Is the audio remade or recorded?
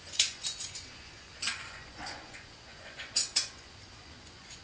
remade